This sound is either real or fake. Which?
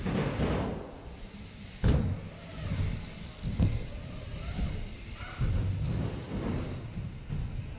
real